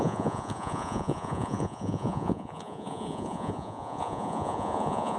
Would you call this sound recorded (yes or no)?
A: no